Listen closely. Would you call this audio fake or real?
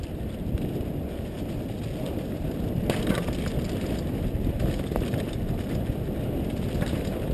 real